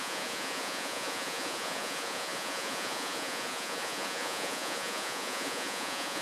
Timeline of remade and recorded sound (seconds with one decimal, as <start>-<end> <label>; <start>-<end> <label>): 0.0-6.2 remade